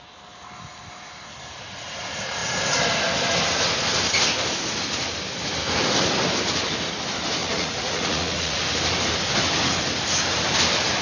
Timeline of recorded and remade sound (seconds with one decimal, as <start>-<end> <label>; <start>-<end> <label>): 0.0-7.4 recorded; 7.4-8.6 remade; 8.6-11.0 recorded